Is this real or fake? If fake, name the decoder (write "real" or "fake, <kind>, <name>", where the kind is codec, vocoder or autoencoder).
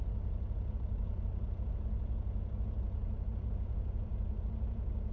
fake, vocoder, Vocos